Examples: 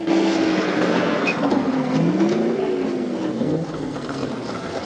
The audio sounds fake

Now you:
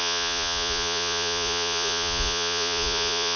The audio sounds fake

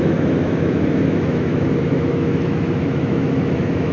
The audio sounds fake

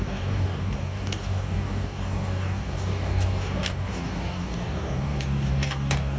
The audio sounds fake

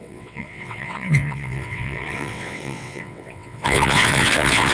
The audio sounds fake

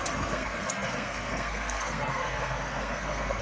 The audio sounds fake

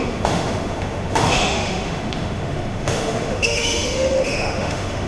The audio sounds fake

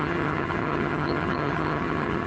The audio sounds fake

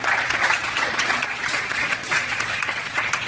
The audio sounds fake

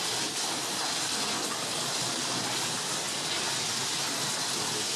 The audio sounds real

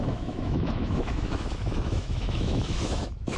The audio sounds fake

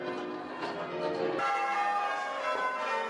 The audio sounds real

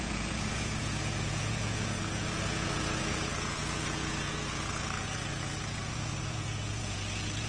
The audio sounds fake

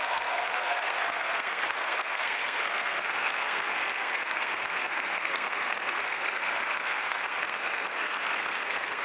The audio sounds fake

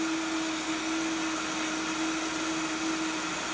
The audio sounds real